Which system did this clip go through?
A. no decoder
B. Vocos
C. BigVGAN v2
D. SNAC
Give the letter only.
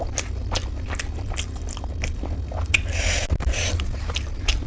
A